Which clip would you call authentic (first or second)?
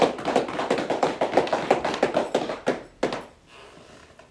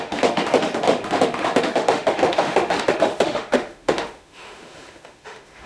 first